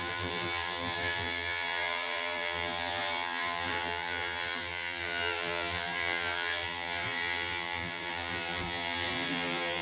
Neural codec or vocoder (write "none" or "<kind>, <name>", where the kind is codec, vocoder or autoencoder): vocoder, BigVGAN v2